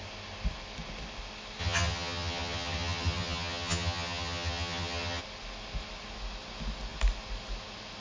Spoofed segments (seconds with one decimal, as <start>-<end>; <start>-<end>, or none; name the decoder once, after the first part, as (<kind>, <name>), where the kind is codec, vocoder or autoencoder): 1.6-5.2 (vocoder, HiFi-GAN)